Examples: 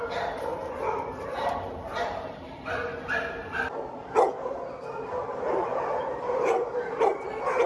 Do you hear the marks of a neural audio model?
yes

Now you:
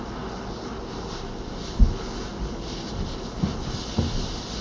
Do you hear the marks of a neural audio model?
no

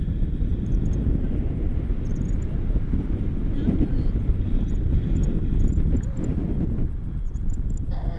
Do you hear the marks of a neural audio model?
yes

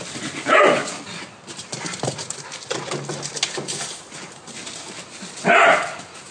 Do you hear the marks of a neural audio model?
no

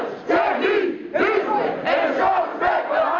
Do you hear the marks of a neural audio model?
no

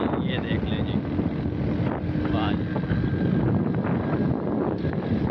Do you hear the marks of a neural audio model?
no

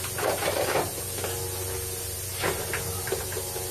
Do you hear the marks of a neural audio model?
no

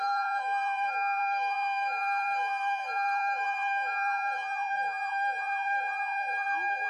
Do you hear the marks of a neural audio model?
yes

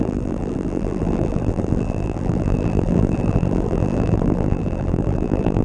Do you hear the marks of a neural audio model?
yes